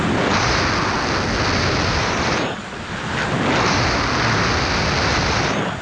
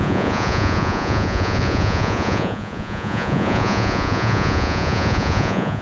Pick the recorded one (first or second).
first